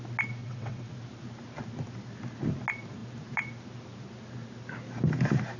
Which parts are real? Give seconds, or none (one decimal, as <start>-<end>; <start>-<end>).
0.0-0.4; 0.9-5.6